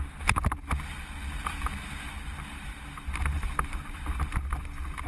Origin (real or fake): real